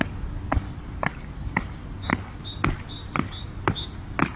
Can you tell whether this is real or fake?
real